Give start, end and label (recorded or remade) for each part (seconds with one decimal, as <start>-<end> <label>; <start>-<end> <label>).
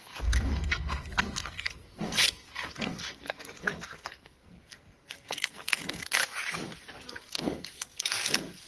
0.0-6.2 remade; 6.2-7.2 recorded; 7.2-8.7 remade